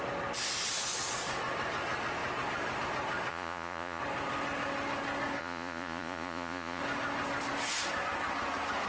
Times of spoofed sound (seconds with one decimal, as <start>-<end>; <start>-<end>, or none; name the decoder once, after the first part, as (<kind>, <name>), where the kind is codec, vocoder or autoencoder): 3.3-4.0 (vocoder, Vocos); 5.4-6.8